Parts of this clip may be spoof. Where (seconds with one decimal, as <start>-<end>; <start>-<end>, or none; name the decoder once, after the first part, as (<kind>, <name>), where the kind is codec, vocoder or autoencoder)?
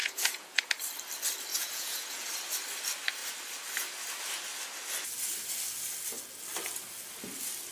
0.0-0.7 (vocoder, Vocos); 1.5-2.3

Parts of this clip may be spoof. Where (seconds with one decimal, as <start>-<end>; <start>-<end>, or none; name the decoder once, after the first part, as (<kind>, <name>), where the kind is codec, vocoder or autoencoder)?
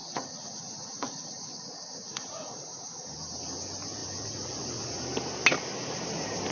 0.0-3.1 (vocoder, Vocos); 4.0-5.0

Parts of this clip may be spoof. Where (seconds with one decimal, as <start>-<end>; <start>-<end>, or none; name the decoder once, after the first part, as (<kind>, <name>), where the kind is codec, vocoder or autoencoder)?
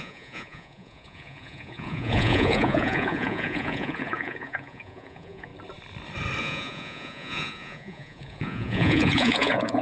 0.0-5.5 (vocoder, Vocos); 6.4-9.8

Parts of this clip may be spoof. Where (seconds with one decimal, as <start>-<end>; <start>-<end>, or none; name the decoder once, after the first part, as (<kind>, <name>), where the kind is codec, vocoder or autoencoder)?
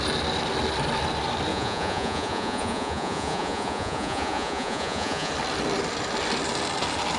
1.5-5.3 (vocoder, Vocos)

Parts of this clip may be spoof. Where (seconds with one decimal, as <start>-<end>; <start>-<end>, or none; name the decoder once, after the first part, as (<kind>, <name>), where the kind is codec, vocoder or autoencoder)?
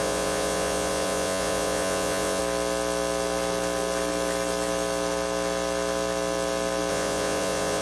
0.0-2.4 (vocoder, Vocos); 6.9-7.8